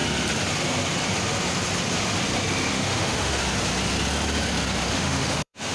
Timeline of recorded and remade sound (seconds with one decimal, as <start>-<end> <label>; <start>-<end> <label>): 0.0-2.7 recorded; 2.7-3.4 remade; 3.4-4.9 recorded; 4.9-5.7 remade